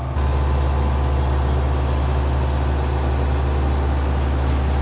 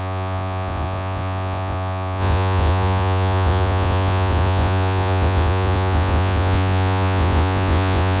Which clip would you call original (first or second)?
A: first